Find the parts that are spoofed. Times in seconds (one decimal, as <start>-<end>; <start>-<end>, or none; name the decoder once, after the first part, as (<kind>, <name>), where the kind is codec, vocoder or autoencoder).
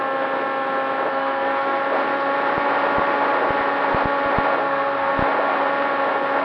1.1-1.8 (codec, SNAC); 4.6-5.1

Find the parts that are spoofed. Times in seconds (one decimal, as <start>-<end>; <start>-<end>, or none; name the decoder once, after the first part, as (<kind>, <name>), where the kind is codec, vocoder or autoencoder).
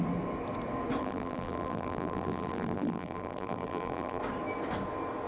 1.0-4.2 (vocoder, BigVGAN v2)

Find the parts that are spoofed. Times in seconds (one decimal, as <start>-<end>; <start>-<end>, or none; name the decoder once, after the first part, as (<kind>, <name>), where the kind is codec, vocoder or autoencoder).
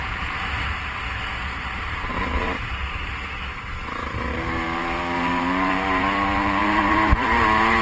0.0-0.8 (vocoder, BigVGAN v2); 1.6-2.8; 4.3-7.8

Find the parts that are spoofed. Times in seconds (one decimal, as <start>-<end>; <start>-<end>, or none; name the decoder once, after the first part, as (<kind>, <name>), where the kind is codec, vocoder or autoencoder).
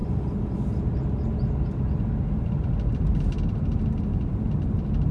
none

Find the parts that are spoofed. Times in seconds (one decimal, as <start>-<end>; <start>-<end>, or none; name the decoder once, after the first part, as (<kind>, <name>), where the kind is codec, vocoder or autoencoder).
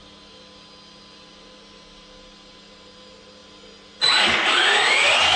none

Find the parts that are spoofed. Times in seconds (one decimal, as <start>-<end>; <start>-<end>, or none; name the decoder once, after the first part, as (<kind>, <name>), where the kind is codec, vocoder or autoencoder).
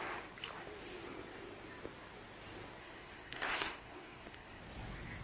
2.8-4.6 (codec, SNAC)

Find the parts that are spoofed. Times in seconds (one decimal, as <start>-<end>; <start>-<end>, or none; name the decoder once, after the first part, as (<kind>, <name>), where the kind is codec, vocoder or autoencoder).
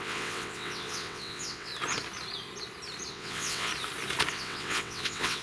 0.0-1.7 (vocoder, WaveNeXt); 3.1-3.7; 4.3-5.4